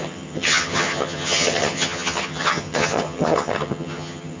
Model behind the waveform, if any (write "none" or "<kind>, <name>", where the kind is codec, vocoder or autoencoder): vocoder, HiFi-GAN